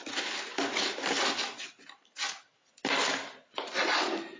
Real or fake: real